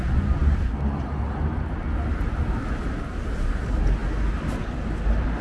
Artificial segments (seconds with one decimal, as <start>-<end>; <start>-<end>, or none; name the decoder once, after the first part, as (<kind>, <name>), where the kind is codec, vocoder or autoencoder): none

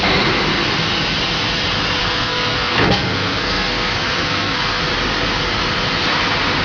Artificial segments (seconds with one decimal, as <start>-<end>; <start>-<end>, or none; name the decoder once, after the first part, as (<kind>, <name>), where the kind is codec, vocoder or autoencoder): 2.0-4.8 (codec, SNAC)

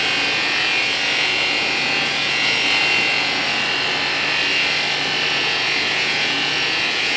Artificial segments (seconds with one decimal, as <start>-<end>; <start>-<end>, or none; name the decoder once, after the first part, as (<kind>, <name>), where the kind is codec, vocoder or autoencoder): 0.0-3.4 (vocoder, Vocos); 5.3-7.2

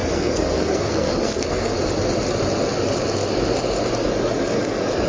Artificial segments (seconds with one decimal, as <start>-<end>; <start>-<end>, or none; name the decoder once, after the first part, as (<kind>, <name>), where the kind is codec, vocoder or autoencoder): 0.0-1.7 (codec, SNAC)

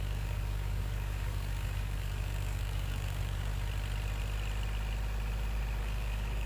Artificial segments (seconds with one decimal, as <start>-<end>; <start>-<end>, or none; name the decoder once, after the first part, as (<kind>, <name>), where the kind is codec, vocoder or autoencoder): 0.0-3.5 (codec, DAC); 5.8-6.5